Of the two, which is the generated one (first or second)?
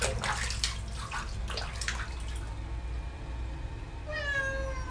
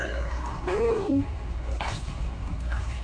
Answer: second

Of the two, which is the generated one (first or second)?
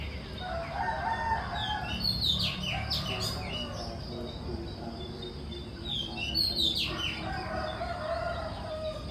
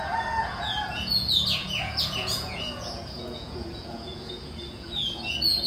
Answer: second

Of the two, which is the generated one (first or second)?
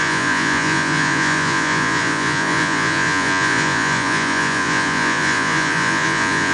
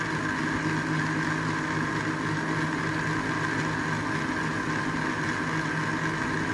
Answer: first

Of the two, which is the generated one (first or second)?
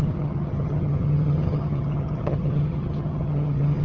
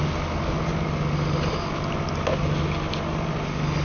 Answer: first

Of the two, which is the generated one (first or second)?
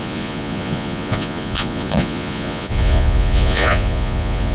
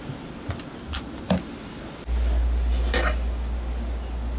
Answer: first